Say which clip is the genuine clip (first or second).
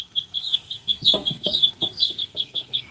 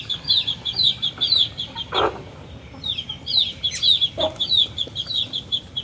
second